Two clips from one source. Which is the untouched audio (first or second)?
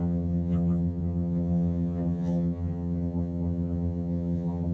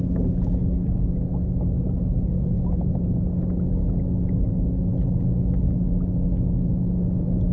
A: second